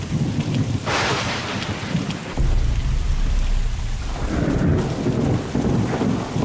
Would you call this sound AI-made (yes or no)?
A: no